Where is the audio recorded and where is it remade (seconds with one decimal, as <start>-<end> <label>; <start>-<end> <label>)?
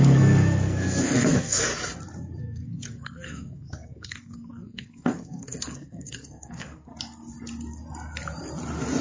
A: 0.0-1.7 remade; 1.7-2.4 recorded; 2.4-6.9 remade; 6.9-9.0 recorded